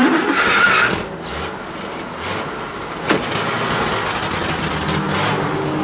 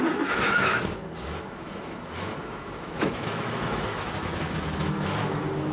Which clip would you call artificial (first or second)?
second